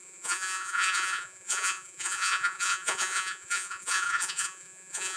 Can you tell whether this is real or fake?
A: fake